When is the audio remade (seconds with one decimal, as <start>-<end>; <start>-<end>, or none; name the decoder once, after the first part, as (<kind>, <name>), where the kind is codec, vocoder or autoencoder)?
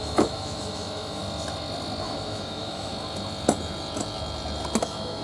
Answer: 0.0-1.2 (autoencoder, DAC-VAE); 2.0-2.9; 4.8-5.2